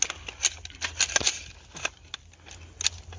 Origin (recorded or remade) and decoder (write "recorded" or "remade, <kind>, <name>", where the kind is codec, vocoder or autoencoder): recorded